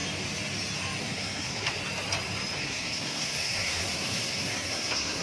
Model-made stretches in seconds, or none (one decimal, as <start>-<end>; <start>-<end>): 1.0-1.8; 2.6-5.2